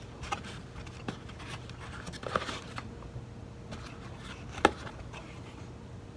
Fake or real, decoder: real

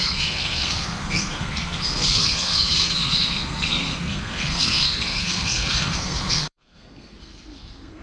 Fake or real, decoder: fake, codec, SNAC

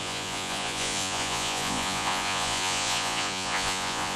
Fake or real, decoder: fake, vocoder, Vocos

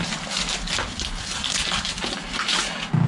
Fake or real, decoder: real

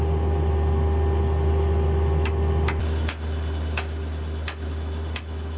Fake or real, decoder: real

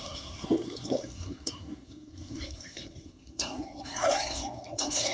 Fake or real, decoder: fake, codec, SNAC